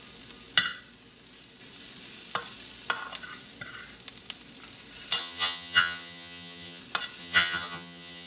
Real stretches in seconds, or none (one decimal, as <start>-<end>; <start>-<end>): 0.0-5.2; 6.8-7.2